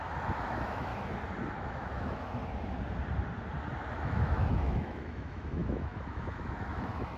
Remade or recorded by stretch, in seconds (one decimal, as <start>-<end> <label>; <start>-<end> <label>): 0.0-0.9 remade; 0.9-1.6 recorded; 1.6-2.4 remade; 2.4-3.9 recorded; 3.9-7.2 remade